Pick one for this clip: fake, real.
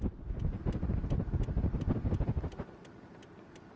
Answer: real